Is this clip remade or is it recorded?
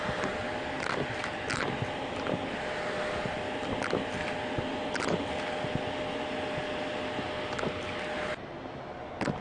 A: recorded